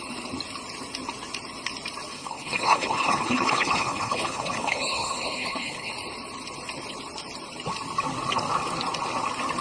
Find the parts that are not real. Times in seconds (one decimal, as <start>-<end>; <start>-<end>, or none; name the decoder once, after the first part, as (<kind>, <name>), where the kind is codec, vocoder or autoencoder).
2.1-5.9 (codec, HILCodec)